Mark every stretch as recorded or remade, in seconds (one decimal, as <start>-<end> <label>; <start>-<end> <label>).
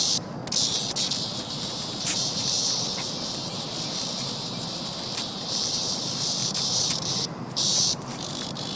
0.0-0.4 remade; 0.4-1.5 recorded; 1.5-8.8 remade